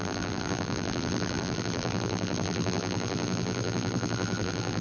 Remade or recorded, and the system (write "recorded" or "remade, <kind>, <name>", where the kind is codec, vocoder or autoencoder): remade, vocoder, BigVGAN v2